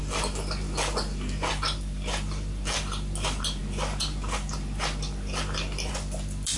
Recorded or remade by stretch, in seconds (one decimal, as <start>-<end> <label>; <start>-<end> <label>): 0.0-6.6 recorded